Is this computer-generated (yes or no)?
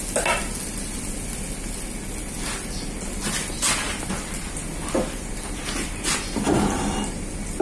no